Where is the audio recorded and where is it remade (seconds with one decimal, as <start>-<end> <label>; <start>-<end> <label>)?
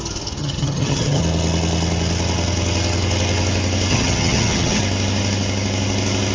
0.0-0.4 recorded; 0.4-1.2 remade; 1.2-3.9 recorded; 3.9-4.8 remade; 4.8-6.3 recorded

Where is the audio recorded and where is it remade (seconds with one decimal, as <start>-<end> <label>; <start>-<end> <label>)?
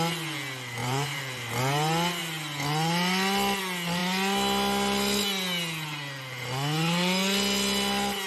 0.0-0.8 recorded; 0.8-1.6 remade; 1.6-8.3 recorded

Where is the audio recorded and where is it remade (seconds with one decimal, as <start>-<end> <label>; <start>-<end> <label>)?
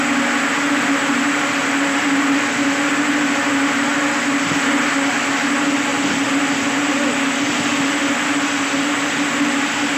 0.0-10.0 recorded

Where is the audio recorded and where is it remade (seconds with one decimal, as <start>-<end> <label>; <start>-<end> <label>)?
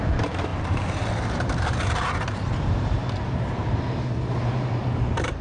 0.0-3.0 remade; 3.0-4.3 recorded; 4.3-5.4 remade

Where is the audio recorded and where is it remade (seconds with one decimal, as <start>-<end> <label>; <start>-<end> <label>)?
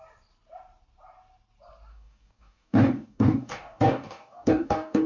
0.0-1.9 recorded; 1.9-5.1 remade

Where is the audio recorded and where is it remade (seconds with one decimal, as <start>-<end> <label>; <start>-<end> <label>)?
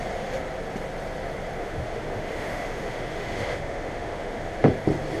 0.0-1.6 recorded; 1.6-4.7 remade; 4.7-5.2 recorded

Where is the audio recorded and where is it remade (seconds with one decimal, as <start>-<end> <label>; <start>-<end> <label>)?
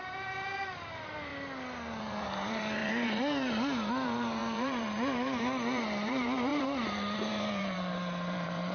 0.0-1.3 remade; 1.3-2.0 recorded; 2.0-8.7 remade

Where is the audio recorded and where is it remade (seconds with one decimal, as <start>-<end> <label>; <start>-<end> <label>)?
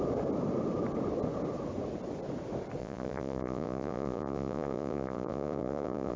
0.0-2.8 recorded; 2.8-6.2 remade